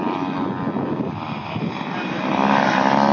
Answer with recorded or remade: recorded